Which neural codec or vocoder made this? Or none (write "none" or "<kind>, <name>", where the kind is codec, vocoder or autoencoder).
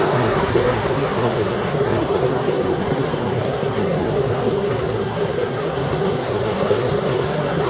codec, SNAC